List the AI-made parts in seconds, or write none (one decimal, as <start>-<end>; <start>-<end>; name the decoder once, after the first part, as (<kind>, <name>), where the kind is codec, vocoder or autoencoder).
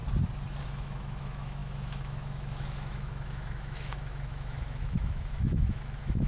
0.6-6.3 (autoencoder, DAC-VAE)